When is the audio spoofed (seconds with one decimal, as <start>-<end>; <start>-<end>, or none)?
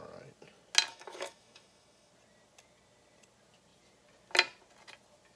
0.9-2.1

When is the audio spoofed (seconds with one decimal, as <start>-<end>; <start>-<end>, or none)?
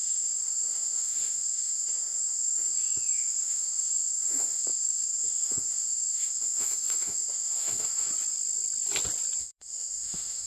0.0-8.1; 9.4-10.5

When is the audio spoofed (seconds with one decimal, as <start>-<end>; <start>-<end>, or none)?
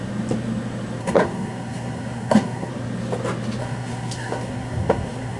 1.0-2.7; 3.6-5.4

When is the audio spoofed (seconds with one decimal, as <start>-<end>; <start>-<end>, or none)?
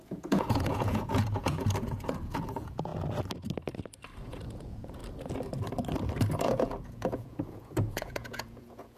0.0-2.9; 4.3-5.0; 6.4-9.0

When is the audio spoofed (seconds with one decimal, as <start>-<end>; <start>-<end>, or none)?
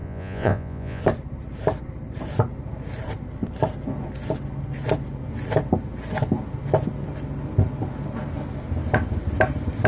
0.0-1.0